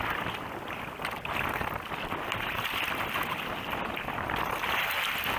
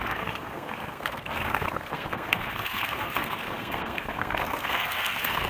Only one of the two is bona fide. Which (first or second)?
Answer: first